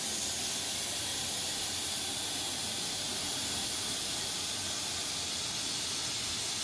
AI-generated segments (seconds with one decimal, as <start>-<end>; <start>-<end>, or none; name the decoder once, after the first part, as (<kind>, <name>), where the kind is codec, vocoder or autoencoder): 1.1-5.1 (vocoder, BigVGAN v2)